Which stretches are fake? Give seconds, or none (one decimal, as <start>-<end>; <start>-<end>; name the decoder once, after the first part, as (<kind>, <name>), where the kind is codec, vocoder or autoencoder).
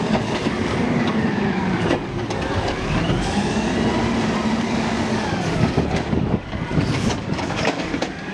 0.0-3.7 (codec, DAC); 4.6-8.3